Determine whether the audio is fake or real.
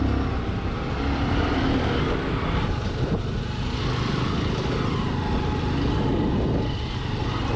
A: real